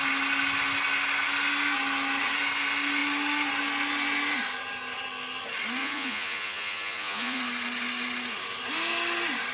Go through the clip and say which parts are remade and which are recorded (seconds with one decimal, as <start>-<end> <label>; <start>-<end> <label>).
0.0-5.8 recorded; 5.8-7.4 remade; 7.4-9.5 recorded

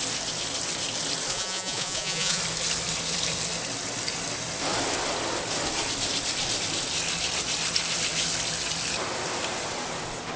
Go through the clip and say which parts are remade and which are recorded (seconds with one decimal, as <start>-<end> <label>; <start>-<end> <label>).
0.0-1.3 recorded; 1.3-2.4 remade; 2.4-10.4 recorded

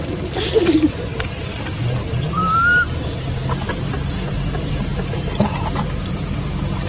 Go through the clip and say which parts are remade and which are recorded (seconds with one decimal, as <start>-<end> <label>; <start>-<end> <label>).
0.0-1.1 remade; 1.1-3.0 recorded; 3.0-3.7 remade; 3.7-4.3 recorded; 4.3-6.9 remade